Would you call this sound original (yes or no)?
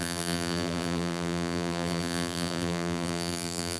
no